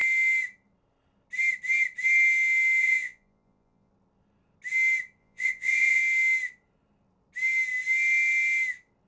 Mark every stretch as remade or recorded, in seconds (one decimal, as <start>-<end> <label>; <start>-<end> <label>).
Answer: 0.0-2.8 recorded; 2.8-3.9 remade; 3.9-5.2 recorded; 5.2-6.0 remade; 6.0-9.1 recorded